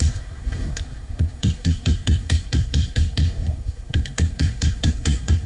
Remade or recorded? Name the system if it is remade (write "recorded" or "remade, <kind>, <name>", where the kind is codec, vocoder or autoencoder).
remade, codec, SNAC